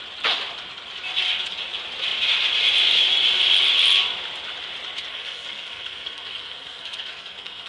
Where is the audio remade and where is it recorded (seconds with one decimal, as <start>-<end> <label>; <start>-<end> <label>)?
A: 0.0-5.1 recorded; 5.1-7.7 remade